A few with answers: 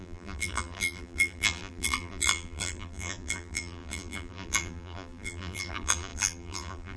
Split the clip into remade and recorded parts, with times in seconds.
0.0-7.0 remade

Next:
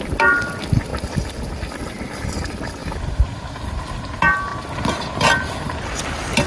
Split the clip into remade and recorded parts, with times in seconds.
0.0-6.5 recorded

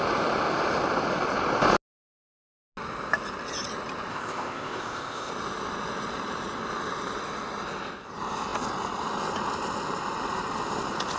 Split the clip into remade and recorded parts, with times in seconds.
0.0-4.1 recorded; 4.1-5.3 remade; 5.3-11.2 recorded

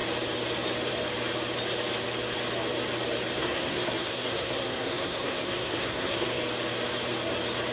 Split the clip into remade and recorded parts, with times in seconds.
0.0-3.4 recorded; 3.4-6.4 remade; 6.4-7.7 recorded

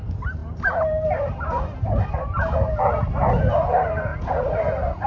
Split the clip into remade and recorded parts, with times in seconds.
0.0-5.1 remade